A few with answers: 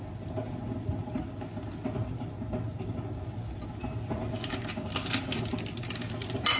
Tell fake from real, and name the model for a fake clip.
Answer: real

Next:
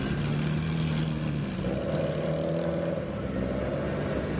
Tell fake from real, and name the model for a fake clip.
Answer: real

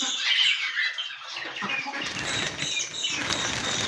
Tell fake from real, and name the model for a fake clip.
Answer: real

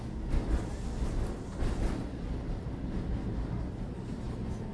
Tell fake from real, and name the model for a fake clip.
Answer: real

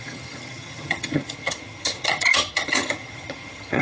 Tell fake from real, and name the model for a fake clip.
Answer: fake, vocoder, HiFi-GAN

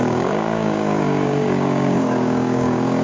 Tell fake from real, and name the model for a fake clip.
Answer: fake, codec, DAC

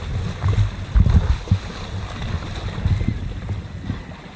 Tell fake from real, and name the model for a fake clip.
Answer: real